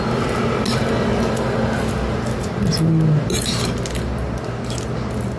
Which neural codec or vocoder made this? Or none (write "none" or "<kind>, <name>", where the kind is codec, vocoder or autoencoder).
none